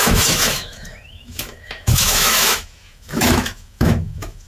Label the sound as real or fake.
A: fake